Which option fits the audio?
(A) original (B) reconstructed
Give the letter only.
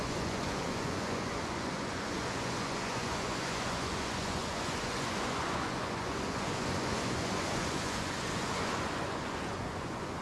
B